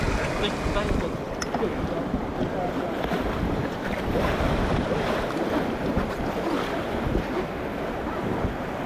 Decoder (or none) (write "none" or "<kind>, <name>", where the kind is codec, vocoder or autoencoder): none